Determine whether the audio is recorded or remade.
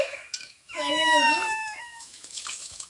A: remade